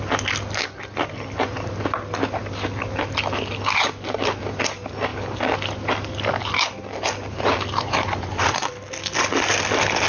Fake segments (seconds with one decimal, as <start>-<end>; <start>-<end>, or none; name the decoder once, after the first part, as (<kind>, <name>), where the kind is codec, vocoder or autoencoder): none